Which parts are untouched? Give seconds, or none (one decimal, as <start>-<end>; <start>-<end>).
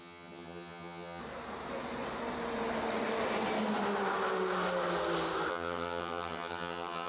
1.2-5.5